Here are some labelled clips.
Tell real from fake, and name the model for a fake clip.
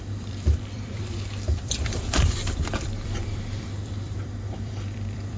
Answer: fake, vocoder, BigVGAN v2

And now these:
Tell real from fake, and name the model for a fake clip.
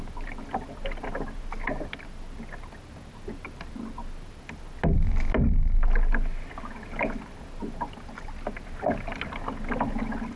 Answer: real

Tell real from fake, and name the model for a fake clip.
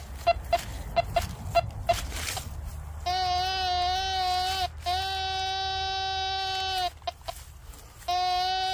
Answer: real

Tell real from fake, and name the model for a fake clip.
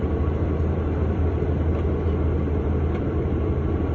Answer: fake, vocoder, BigVGAN v2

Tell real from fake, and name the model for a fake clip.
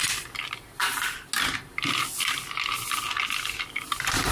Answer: real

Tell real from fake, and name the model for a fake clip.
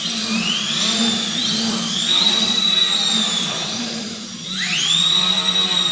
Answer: fake, vocoder, BigVGAN v2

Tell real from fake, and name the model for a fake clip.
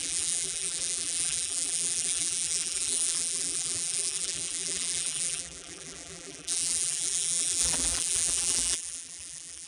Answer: fake, vocoder, BigVGAN v2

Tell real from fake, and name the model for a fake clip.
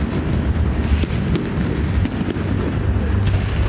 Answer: real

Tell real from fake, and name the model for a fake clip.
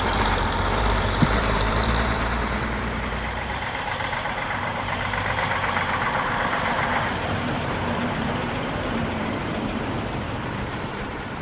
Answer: fake, vocoder, BigVGAN v2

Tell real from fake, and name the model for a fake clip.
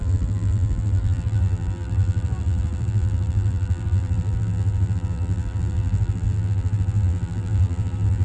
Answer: fake, vocoder, BigVGAN v2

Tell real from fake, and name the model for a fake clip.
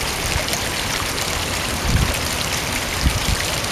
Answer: fake, vocoder, BigVGAN v2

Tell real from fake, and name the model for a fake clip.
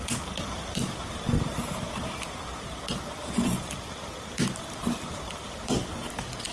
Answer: fake, vocoder, BigVGAN v2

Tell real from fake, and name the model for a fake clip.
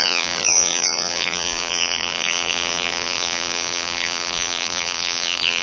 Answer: fake, vocoder, BigVGAN v2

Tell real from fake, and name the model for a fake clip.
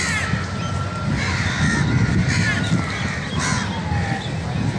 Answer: real